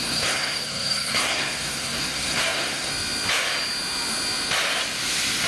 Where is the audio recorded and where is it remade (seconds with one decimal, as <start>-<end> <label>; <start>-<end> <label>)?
0.0-2.9 remade; 2.9-5.5 recorded